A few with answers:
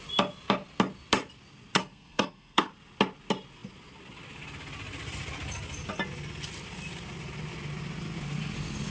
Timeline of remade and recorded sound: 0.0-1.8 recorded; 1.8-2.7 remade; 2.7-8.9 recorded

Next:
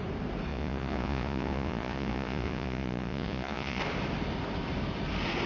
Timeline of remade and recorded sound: 0.0-0.5 recorded; 0.5-3.8 remade; 3.8-5.5 recorded

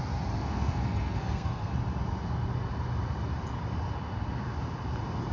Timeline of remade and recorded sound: 0.0-0.4 recorded; 0.4-1.7 remade; 1.7-5.3 recorded

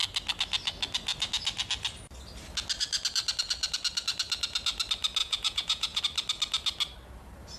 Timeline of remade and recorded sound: 0.0-5.2 recorded; 5.2-6.0 remade; 6.0-7.6 recorded

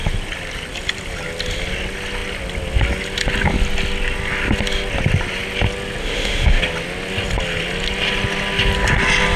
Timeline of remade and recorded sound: 0.0-6.0 recorded; 6.0-6.6 remade; 6.6-9.4 recorded